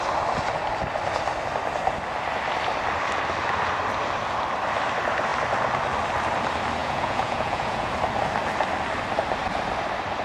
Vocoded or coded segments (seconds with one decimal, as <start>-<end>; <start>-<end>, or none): 6.8-7.9